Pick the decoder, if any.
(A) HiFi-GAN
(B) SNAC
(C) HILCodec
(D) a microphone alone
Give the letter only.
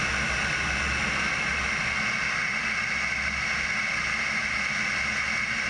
D